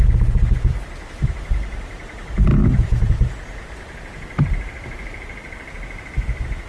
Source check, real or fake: fake